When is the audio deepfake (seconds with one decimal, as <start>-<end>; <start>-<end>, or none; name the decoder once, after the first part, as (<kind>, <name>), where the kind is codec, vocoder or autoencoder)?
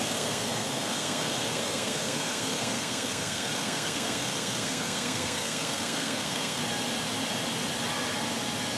0.0-6.6 (codec, SNAC)